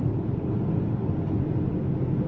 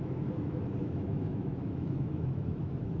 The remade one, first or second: second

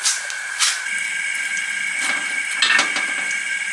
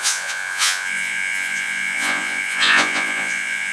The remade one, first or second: second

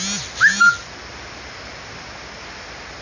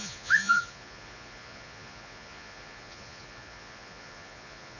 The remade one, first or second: second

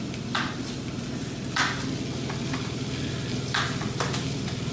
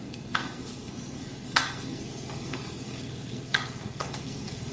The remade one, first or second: second